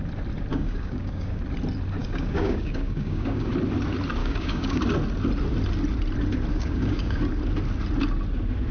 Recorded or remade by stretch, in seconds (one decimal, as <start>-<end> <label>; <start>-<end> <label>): 0.0-0.5 recorded; 0.5-1.4 remade; 1.4-2.0 recorded; 2.0-3.5 remade; 3.5-4.2 recorded; 4.2-4.8 remade; 4.8-6.5 recorded; 6.5-7.2 remade; 7.2-8.7 recorded